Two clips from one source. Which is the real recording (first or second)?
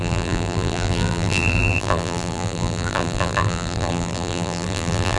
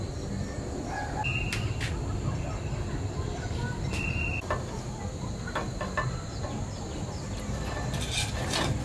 second